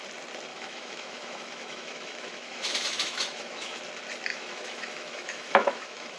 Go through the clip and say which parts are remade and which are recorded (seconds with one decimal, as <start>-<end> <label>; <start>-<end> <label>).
0.0-0.5 recorded; 0.5-3.8 remade; 3.8-4.3 recorded; 4.3-6.2 remade